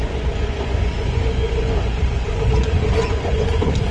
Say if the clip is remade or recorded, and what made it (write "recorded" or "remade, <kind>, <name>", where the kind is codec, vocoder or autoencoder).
remade, vocoder, Vocos